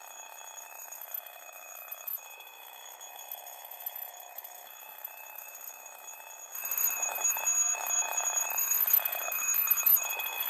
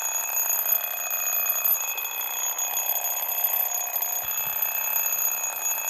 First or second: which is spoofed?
first